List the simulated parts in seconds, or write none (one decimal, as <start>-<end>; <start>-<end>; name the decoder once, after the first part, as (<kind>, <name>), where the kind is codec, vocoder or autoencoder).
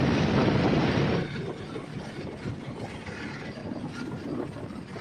none